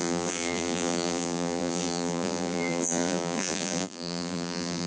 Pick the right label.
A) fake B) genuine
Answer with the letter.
A